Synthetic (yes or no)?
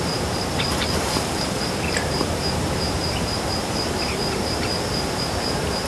yes